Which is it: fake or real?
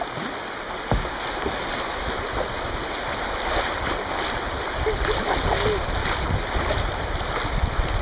real